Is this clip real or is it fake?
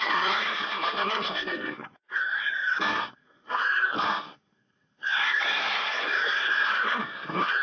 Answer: fake